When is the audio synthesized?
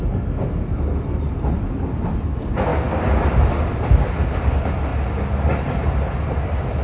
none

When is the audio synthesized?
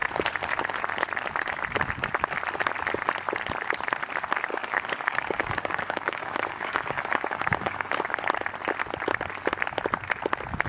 4.5-8.2 (codec, DAC)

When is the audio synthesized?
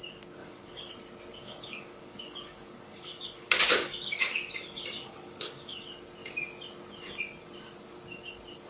0.4-0.9 (codec, DAC); 1.3-5.8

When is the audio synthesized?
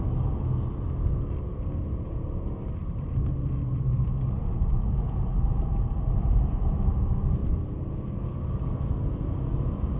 none